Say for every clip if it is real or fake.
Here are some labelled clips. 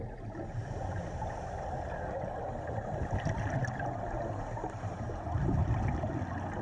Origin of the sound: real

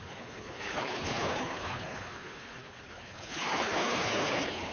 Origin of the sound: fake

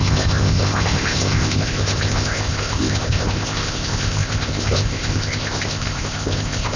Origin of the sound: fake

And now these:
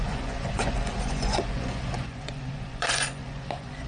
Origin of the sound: fake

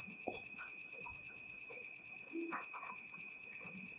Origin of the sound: fake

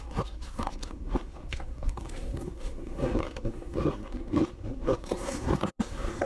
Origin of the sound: fake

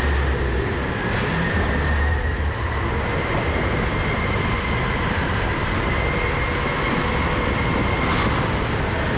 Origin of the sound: real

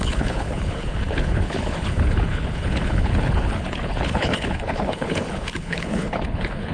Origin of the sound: fake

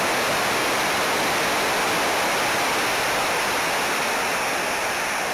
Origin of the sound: real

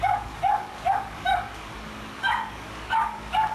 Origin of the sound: fake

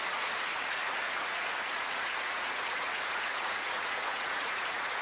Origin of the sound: fake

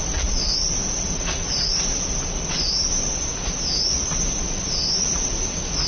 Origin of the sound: real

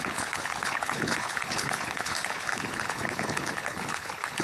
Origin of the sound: fake